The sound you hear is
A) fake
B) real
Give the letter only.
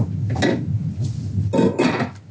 B